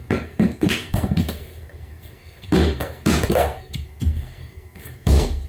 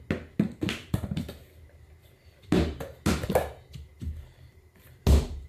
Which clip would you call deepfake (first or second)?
first